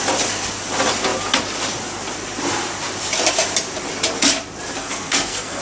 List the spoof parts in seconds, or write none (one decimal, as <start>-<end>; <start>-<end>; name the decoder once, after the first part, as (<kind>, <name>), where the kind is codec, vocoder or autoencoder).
4.8-5.6 (codec, SNAC)